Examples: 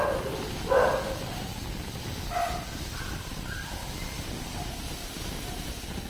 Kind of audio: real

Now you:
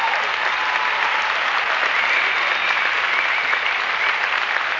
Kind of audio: real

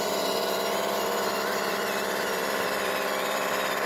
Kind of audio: fake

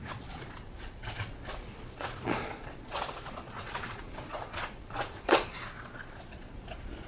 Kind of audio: fake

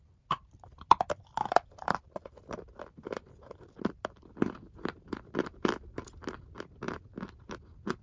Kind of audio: real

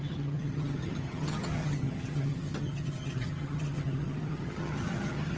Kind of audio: fake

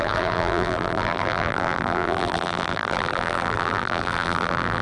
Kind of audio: fake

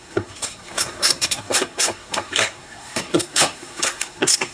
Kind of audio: fake